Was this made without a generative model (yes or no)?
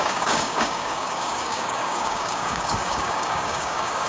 no